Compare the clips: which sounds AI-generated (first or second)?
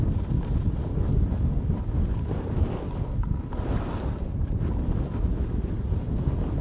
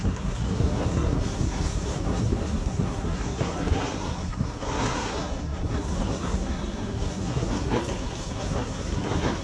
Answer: second